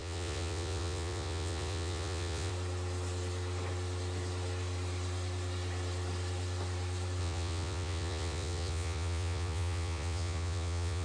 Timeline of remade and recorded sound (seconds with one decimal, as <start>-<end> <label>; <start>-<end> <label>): 0.0-2.5 remade; 2.5-7.2 recorded; 7.2-11.0 remade